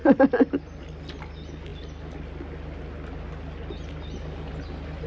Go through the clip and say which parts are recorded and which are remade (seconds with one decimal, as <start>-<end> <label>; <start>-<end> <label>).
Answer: 0.0-0.8 remade; 0.8-5.1 recorded